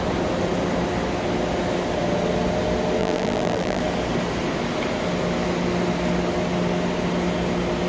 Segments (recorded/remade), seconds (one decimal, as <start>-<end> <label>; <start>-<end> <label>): 0.0-3.0 recorded; 3.0-3.8 remade; 3.8-7.9 recorded